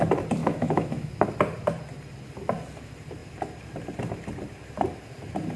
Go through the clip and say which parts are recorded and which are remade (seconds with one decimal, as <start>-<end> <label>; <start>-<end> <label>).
0.0-0.4 recorded; 0.4-1.1 remade; 1.1-5.6 recorded